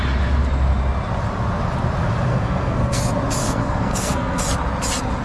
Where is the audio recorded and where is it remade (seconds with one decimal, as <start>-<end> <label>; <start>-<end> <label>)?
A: 0.0-2.3 recorded; 2.3-3.0 remade; 3.0-3.4 recorded; 3.4-4.4 remade; 4.4-5.2 recorded